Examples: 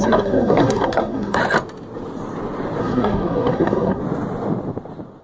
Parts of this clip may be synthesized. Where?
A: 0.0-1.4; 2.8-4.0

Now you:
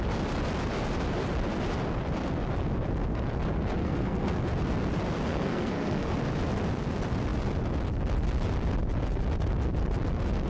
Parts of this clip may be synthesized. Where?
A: 3.8-4.4; 5.3-6.1

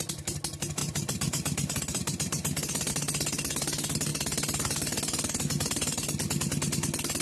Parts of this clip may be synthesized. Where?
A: 0.8-2.9

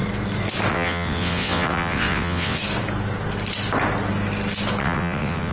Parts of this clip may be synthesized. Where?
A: 0.7-2.6; 4.8-5.5

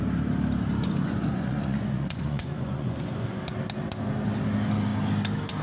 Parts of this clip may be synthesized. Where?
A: 0.8-3.4

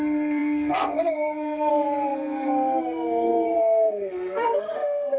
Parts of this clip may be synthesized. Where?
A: 0.0-5.2